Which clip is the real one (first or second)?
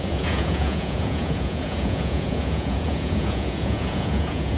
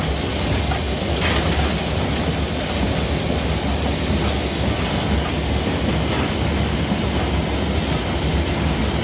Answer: second